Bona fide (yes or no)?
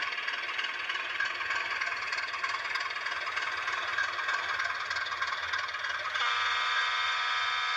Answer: yes